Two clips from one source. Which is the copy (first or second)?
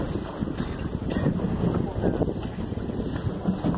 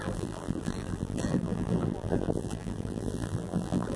second